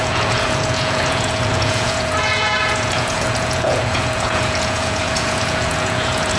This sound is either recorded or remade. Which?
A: remade